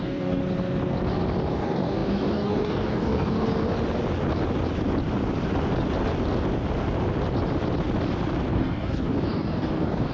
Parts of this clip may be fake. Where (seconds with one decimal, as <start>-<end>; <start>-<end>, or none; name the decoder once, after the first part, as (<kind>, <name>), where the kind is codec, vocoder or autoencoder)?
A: 0.0-0.4 (codec, DAC); 1.5-3.5; 8.5-10.1